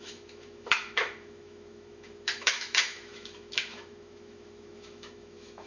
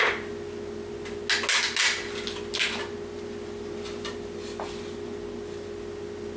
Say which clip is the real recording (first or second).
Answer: second